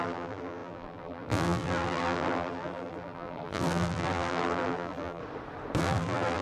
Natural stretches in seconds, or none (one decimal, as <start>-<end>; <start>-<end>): 5.2-5.8